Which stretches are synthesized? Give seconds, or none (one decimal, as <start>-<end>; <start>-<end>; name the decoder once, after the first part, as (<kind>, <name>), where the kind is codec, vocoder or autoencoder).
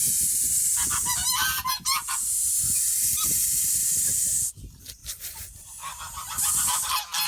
5.0-5.7 (vocoder, BigVGAN v2)